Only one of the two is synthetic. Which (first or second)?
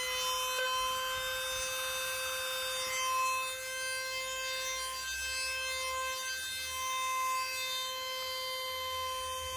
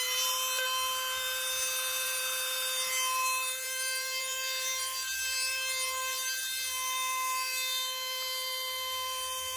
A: second